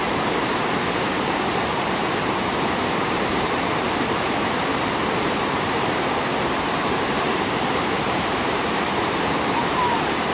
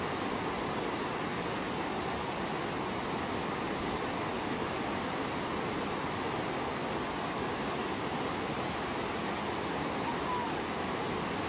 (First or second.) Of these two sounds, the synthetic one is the first